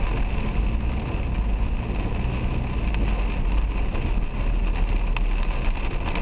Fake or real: real